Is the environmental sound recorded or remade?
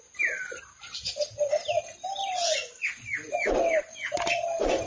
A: recorded